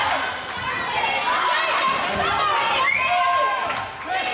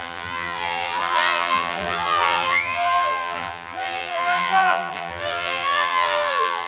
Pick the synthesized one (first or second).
second